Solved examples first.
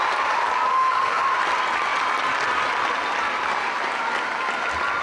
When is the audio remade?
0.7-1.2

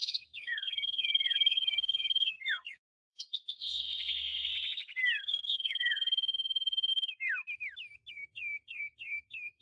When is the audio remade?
0.0-4.5; 5.2-6.9; 8.1-9.6

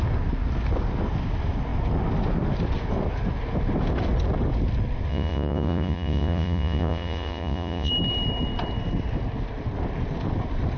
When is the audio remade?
5.1-7.9

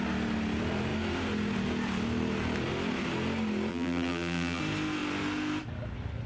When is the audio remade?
3.7-4.6